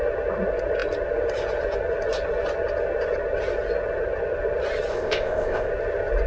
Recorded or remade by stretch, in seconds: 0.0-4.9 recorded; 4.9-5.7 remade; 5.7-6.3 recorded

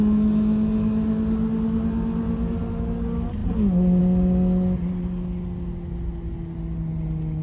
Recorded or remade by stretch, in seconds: 0.0-7.4 recorded

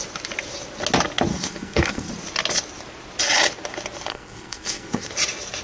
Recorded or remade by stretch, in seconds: 0.0-1.3 recorded; 1.3-2.1 remade; 2.1-4.1 recorded; 4.1-5.1 remade; 5.1-5.6 recorded